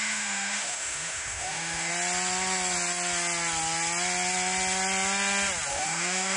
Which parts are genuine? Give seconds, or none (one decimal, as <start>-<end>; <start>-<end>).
1.9-5.7